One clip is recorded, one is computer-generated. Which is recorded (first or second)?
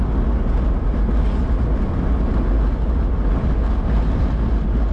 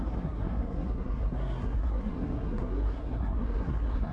first